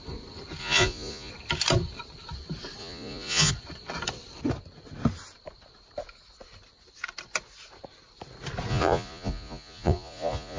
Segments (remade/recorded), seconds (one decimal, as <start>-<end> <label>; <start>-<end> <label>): 0.0-0.6 recorded; 0.6-1.3 remade; 1.3-2.8 recorded; 2.8-3.5 remade; 3.5-8.7 recorded; 8.7-10.6 remade